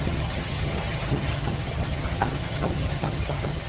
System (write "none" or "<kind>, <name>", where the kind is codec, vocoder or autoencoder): vocoder, HiFi-GAN